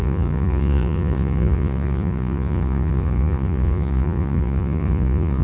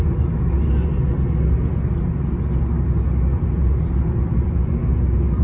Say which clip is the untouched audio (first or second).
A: second